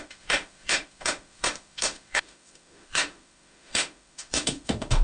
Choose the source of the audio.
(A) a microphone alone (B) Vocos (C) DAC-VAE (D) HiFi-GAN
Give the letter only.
C